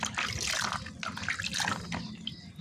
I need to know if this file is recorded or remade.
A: recorded